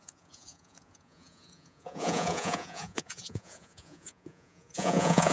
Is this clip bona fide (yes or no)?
no